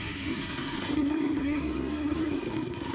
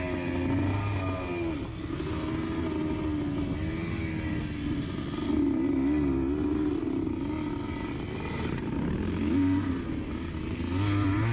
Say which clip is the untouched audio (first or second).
second